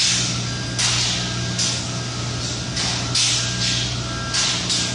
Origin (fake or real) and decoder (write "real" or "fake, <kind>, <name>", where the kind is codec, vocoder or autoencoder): real